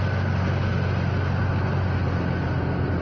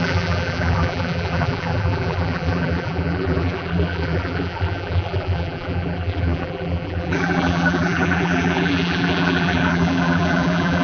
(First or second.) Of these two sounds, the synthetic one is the second